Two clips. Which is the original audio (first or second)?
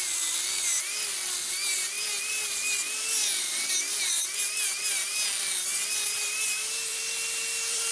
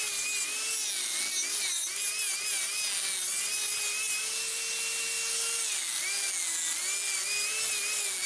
second